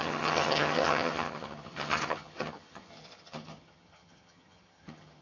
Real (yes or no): no